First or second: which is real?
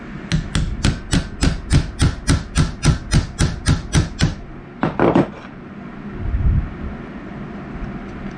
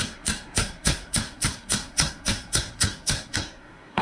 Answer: first